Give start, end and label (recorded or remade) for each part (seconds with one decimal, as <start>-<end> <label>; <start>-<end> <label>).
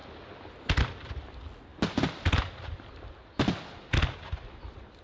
0.0-5.0 recorded